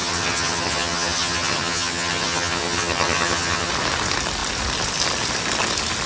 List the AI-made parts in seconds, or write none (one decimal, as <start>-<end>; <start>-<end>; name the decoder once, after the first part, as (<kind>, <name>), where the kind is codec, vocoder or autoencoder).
0.0-3.7 (vocoder, HiFi-GAN)